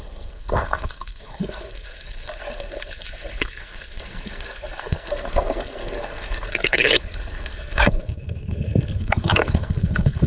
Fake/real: fake